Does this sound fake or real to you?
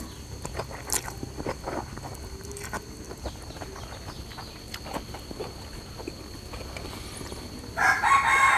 real